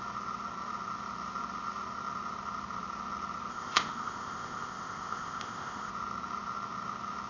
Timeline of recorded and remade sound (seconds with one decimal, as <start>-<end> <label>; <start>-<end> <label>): 0.0-3.5 recorded; 3.5-5.9 remade; 5.9-7.3 recorded